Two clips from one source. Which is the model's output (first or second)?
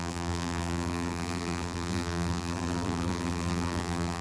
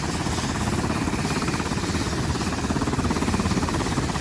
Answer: first